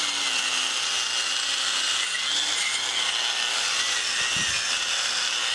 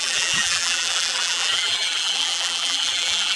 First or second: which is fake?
second